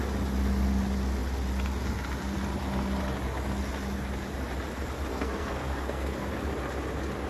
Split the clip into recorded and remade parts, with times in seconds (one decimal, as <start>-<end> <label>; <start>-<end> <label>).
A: 0.0-5.1 recorded; 5.1-6.3 remade; 6.3-7.3 recorded